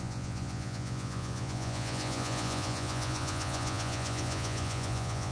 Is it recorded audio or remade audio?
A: remade